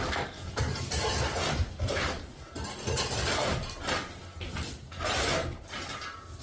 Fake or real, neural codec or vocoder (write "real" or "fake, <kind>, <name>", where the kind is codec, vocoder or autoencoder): real